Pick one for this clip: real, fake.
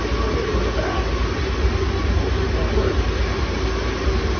real